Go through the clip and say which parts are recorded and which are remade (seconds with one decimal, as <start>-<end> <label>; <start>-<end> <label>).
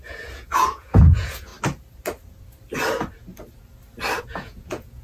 0.0-1.5 remade; 1.5-4.2 recorded; 4.2-5.0 remade